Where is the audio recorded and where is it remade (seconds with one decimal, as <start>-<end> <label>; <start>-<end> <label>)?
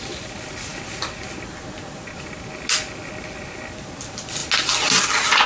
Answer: 0.0-5.5 recorded